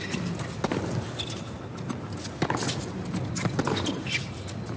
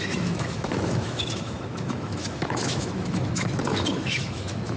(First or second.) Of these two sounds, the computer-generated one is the second